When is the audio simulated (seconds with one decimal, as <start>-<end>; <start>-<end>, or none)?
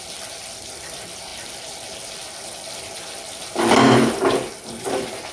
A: 0.0-1.3; 4.5-5.3